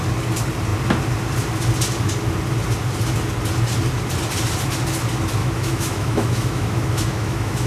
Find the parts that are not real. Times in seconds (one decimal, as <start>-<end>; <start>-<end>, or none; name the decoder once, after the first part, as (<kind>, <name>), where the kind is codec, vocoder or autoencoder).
5.4-7.7 (autoencoder, DAC-VAE)